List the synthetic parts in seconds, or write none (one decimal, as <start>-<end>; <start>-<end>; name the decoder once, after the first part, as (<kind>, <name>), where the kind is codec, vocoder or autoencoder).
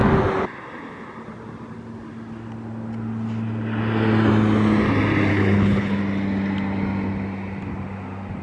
5.3-6.0 (codec, HILCodec)